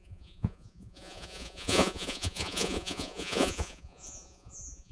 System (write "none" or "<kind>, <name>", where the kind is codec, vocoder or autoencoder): vocoder, Vocos